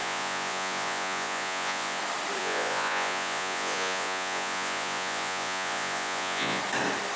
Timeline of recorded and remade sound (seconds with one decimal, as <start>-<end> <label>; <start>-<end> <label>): 0.0-2.0 remade; 2.0-2.4 recorded; 2.4-6.6 remade; 6.6-7.2 recorded